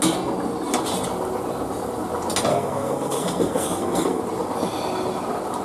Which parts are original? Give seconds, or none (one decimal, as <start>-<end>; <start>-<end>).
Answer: 0.0-2.5; 4.2-5.6